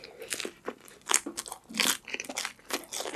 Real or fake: real